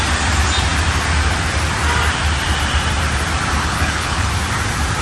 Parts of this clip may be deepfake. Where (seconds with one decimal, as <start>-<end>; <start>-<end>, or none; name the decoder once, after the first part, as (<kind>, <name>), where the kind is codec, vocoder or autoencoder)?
3.6-4.3 (codec, HILCodec)